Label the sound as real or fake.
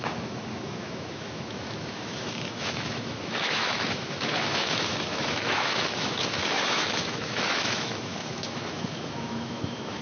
fake